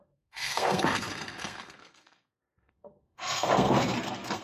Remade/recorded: remade